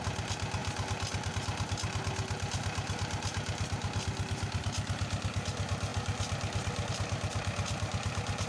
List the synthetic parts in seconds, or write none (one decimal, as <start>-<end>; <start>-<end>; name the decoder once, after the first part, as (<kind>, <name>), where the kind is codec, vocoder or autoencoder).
none